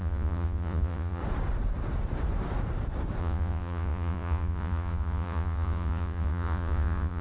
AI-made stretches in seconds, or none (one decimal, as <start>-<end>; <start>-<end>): 0.0-1.2; 3.2-7.2